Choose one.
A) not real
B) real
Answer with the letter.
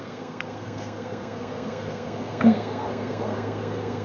A